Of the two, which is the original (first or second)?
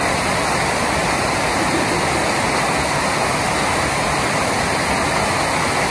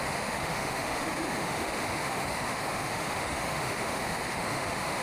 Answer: first